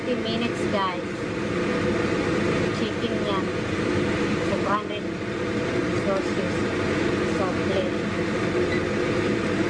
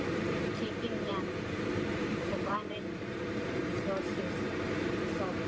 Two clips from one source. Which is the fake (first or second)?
second